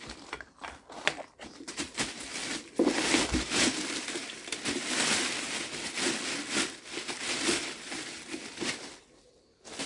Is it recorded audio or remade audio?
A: remade